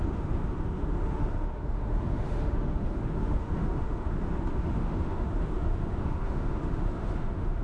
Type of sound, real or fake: fake